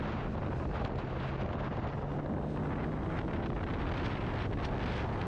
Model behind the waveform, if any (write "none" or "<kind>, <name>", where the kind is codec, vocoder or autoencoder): none